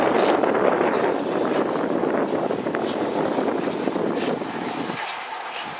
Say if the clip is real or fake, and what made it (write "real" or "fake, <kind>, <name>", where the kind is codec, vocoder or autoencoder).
real